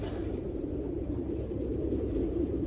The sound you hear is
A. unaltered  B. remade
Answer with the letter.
B